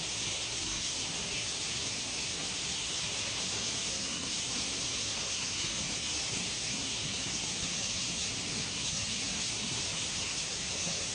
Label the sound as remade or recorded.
remade